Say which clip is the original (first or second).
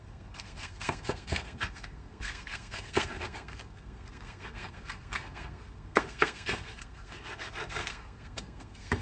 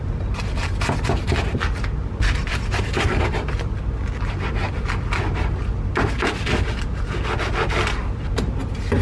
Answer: second